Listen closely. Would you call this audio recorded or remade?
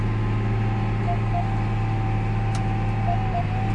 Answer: recorded